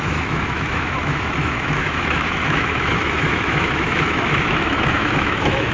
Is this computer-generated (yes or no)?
yes